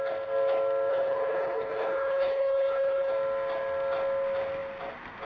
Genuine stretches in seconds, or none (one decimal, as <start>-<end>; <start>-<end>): 0.0-0.9; 3.1-5.3